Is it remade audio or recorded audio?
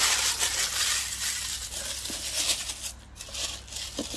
recorded